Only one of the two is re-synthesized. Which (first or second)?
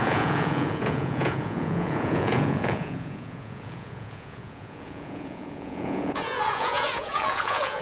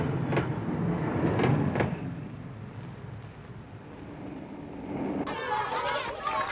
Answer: first